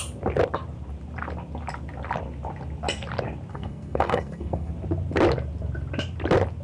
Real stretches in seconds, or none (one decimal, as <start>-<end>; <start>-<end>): 0.0-3.5; 4.7-6.6